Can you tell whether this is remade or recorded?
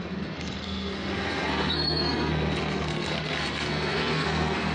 remade